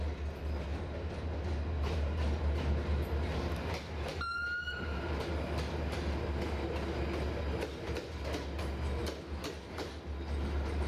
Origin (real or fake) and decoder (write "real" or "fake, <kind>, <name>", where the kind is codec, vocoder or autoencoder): real